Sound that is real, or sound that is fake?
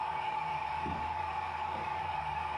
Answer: fake